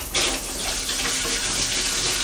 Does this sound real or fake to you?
real